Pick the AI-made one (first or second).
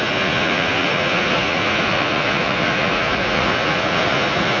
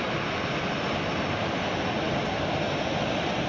first